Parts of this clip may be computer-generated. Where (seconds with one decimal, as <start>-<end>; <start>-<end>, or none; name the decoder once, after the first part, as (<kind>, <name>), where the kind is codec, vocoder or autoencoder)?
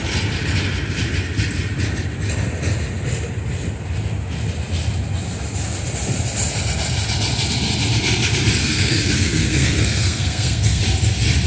8.6-10.8 (codec, SNAC)